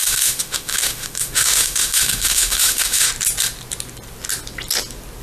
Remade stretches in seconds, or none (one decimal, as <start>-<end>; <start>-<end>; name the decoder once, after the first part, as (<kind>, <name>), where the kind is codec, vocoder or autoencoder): 0.0-3.1 (autoencoder, DAC-VAE)

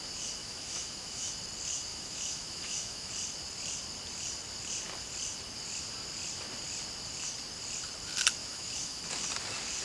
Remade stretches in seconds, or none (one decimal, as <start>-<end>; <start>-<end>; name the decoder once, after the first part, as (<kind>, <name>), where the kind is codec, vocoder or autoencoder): 0.4-1.3 (autoencoder, DAC-VAE); 1.9-3.1; 8.4-9.0

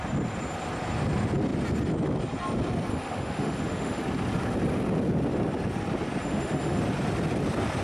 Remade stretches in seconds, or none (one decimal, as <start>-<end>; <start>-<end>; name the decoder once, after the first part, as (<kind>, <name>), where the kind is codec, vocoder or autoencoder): 2.9-4.0 (autoencoder, DAC-VAE); 6.2-6.8

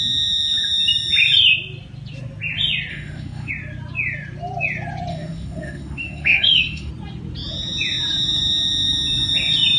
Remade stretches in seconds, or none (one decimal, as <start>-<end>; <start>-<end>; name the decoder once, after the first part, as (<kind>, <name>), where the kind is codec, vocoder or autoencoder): 2.9-3.5 (autoencoder, DAC-VAE); 5.1-6.9